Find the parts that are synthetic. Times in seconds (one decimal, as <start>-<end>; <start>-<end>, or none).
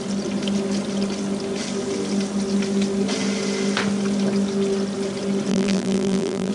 5.5-6.5